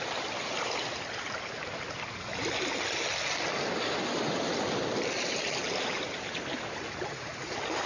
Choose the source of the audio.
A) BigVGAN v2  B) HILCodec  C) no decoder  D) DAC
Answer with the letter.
C